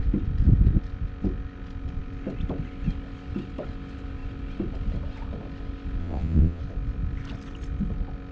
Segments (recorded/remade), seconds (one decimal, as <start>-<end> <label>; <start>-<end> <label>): 0.0-6.0 recorded; 6.0-6.6 remade; 6.6-8.3 recorded